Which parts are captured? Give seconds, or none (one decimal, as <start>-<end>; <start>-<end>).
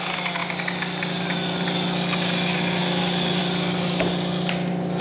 0.0-5.0